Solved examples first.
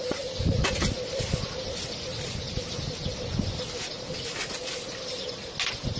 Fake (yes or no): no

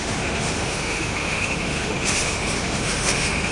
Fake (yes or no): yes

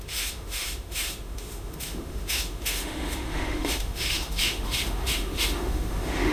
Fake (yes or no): yes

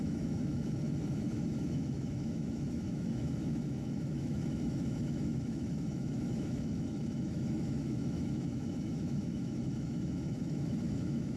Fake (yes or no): yes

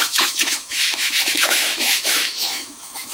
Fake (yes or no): yes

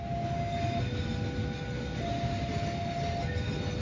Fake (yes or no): no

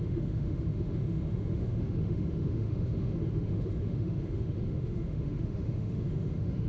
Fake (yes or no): yes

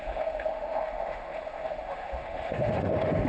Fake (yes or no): yes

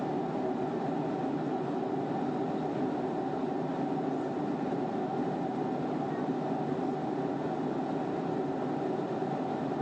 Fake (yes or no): no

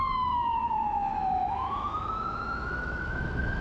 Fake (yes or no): yes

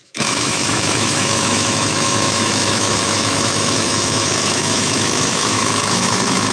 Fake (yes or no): yes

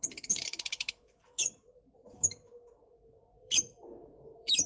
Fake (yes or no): yes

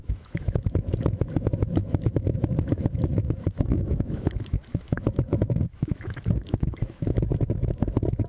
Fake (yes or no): yes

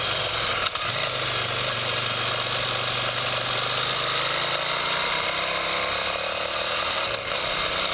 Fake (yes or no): no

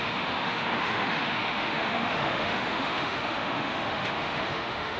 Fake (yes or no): yes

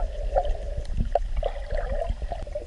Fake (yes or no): no